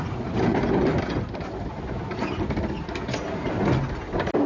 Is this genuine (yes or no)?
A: yes